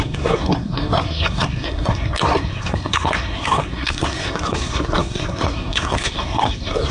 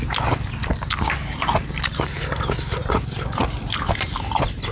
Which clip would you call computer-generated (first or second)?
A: first